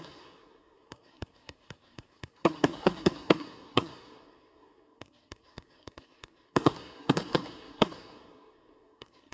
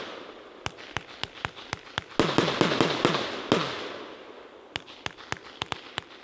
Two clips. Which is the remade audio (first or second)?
first